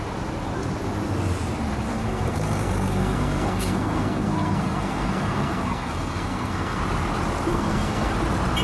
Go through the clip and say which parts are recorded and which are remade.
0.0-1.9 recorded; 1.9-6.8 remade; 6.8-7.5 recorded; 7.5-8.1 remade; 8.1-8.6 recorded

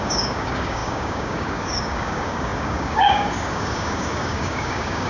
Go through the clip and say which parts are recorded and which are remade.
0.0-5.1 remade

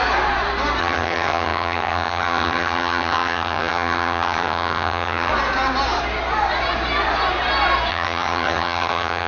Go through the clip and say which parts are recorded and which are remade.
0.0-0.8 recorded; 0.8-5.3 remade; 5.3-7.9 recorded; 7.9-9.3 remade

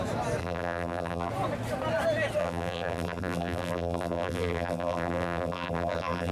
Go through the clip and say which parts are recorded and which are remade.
0.0-0.4 recorded; 0.4-1.3 remade; 1.3-2.4 recorded; 2.4-6.3 remade

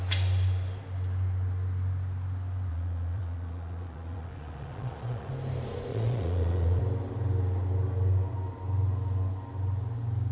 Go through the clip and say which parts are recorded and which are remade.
0.0-2.7 recorded; 2.7-5.3 remade; 5.3-5.9 recorded; 5.9-6.8 remade; 6.8-10.3 recorded

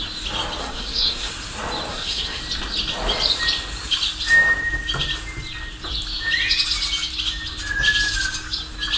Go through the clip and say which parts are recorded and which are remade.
0.0-0.6 recorded; 0.6-1.3 remade; 1.3-1.9 recorded; 1.9-2.4 remade; 2.4-9.0 recorded

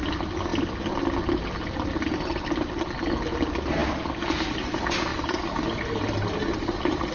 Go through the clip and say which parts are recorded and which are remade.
0.0-7.1 recorded